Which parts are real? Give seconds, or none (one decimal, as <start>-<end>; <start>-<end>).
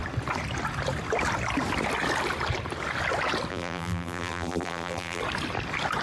0.0-3.5; 5.2-6.0